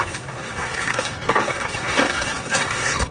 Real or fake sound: fake